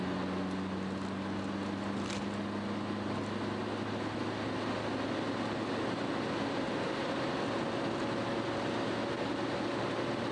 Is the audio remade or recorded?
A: recorded